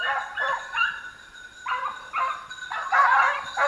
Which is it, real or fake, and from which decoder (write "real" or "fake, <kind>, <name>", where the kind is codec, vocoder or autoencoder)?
real